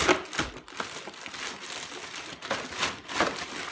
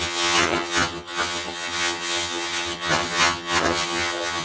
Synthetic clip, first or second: second